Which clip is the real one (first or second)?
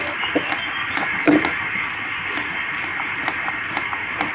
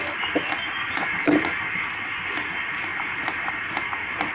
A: second